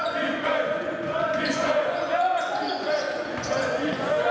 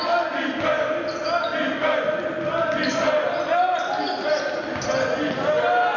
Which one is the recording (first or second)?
second